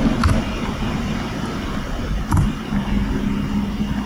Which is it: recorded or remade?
recorded